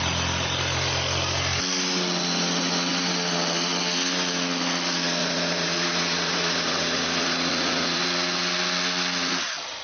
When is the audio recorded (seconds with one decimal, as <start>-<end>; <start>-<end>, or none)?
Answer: 0.0-5.2; 8.0-9.8